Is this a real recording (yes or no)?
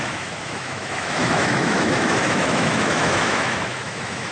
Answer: no